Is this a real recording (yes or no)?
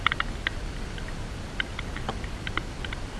yes